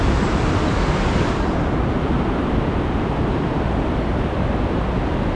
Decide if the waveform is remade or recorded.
recorded